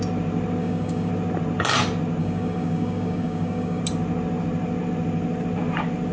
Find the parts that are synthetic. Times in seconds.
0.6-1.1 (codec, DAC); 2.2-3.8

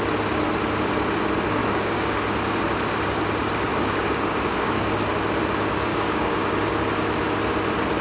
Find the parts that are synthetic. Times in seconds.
1.6-2.2 (codec, DAC); 3.7-5.2; 5.9-6.5